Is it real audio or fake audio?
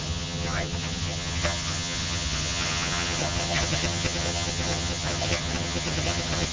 fake